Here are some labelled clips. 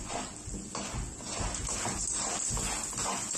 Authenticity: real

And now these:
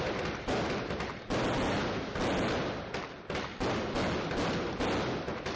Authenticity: real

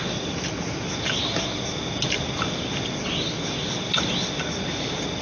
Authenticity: real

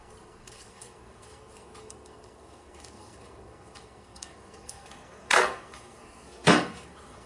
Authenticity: fake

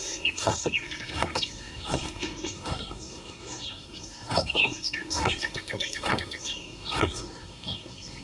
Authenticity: fake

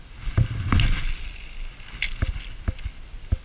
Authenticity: real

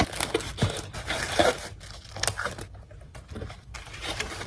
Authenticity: real